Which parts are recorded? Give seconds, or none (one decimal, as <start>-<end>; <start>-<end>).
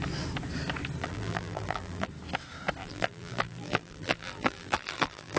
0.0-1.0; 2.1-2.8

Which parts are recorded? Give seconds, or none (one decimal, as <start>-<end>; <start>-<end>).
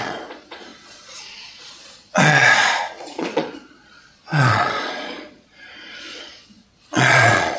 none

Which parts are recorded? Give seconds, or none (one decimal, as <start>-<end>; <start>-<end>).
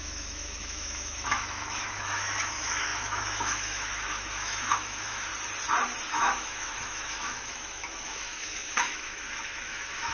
5.3-6.1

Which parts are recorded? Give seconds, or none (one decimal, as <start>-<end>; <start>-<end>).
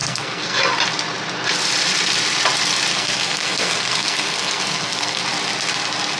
0.6-2.9; 5.2-6.2